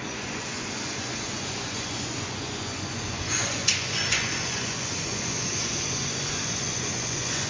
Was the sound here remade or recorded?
remade